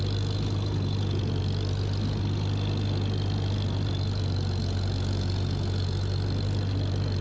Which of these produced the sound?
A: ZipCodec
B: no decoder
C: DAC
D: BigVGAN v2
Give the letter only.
B